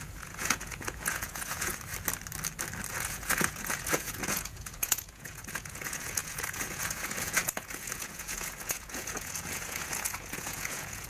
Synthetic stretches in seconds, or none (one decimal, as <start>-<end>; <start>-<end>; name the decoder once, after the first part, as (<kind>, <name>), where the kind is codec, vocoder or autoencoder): 0.0-1.7 (vocoder, Vocos); 2.9-11.1